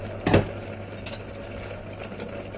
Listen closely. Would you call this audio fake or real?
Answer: real